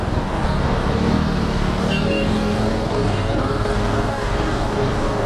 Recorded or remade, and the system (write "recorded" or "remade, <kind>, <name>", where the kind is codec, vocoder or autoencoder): remade, codec, DAC